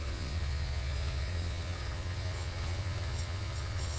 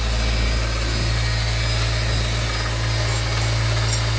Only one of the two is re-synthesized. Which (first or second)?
first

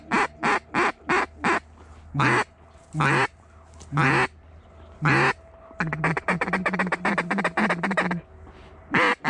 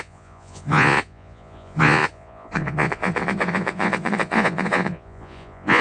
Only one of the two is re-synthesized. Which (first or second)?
second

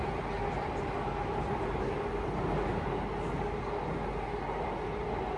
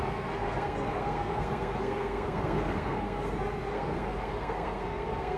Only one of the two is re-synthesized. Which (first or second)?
second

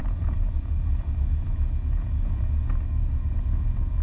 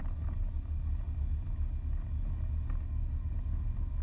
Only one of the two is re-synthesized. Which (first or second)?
first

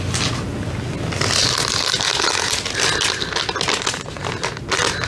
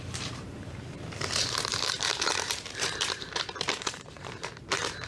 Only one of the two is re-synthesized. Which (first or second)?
second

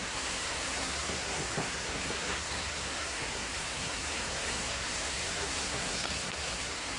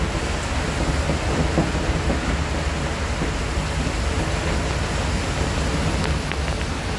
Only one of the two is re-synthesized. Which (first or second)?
first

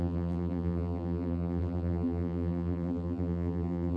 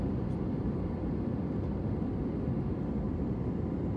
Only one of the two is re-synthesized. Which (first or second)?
first